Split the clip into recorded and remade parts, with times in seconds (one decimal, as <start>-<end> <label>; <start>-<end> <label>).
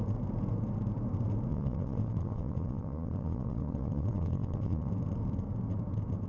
0.0-1.5 recorded; 1.5-4.9 remade; 4.9-6.3 recorded